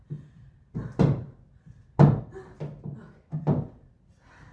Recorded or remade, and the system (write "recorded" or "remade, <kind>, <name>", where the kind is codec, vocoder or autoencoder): recorded